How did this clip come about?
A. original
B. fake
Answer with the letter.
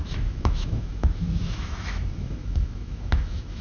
B